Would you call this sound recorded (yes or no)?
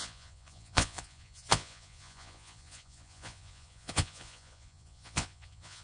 no